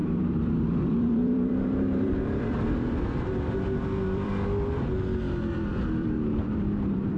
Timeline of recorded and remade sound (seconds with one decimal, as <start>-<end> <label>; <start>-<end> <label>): 0.0-4.3 remade; 4.3-5.7 recorded; 5.7-7.2 remade